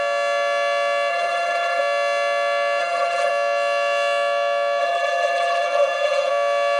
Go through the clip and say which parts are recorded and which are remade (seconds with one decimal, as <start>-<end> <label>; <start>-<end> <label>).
0.0-1.1 recorded; 1.1-1.8 remade; 1.8-2.8 recorded; 2.8-3.3 remade; 3.3-4.8 recorded; 4.8-6.3 remade; 6.3-6.8 recorded